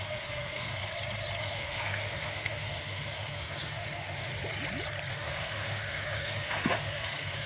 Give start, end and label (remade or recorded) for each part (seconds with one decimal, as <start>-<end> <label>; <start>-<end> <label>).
0.0-0.8 remade; 0.8-1.4 recorded; 1.4-4.3 remade; 4.3-5.1 recorded; 5.1-7.5 remade